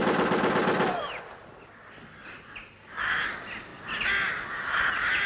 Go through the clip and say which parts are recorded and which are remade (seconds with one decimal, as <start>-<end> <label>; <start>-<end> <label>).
0.0-5.3 recorded